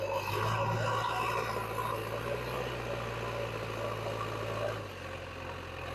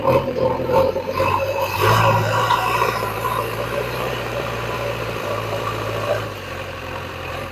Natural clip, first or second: first